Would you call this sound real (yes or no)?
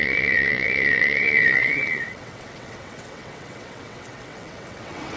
no